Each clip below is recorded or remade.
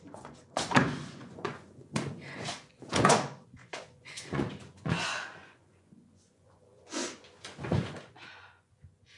remade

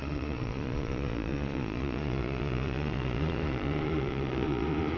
remade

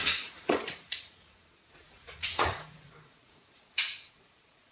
remade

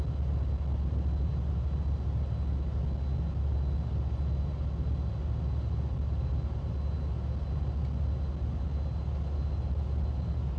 recorded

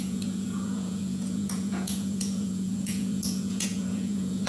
remade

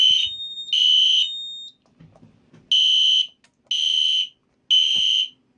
recorded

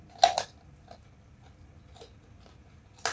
recorded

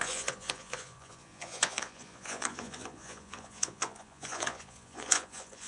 remade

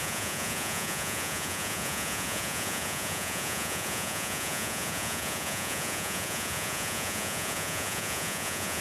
remade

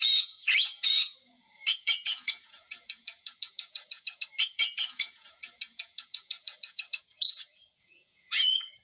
remade